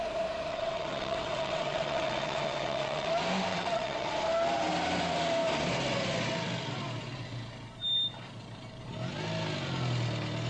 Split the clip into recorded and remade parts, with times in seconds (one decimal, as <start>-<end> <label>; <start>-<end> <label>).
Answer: 0.0-0.5 recorded; 0.5-3.1 remade; 3.1-3.5 recorded; 3.5-4.1 remade; 4.1-10.5 recorded